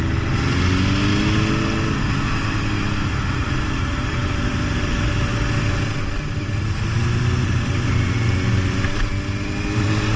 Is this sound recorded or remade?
recorded